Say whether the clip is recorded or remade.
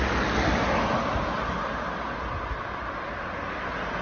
recorded